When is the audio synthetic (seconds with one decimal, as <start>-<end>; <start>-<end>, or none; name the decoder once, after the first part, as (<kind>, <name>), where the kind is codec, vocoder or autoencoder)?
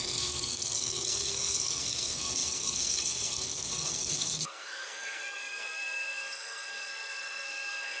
0.0-8.0 (codec, SNAC)